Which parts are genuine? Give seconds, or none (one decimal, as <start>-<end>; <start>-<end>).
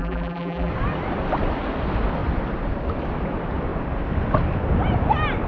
0.7-5.5